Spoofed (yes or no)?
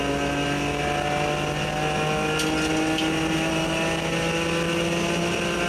no